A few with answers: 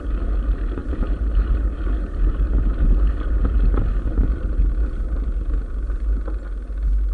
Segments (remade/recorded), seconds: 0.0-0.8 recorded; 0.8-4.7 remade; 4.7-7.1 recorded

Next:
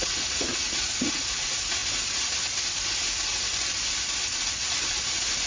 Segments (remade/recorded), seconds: 0.0-1.8 remade; 1.8-4.4 recorded; 4.4-5.5 remade

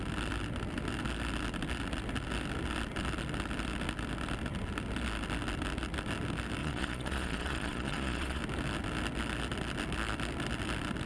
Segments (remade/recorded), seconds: 0.0-6.6 recorded; 6.6-8.4 remade; 8.4-11.1 recorded

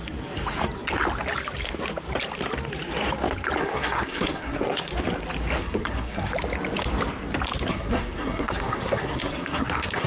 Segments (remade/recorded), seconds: 0.0-3.6 recorded; 3.6-4.9 remade; 4.9-5.6 recorded; 5.6-6.3 remade; 6.3-7.7 recorded; 7.7-10.1 remade

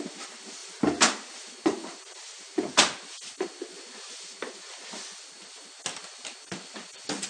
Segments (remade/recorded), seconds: 0.0-7.3 recorded

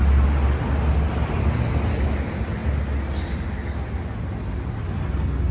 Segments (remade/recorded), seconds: 0.0-5.5 recorded

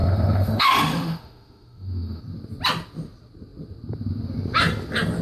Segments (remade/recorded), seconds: 0.0-2.2 remade; 2.2-5.2 recorded

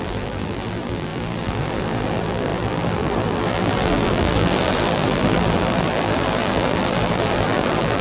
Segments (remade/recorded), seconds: 0.0-8.0 remade